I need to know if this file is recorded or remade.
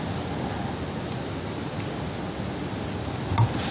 recorded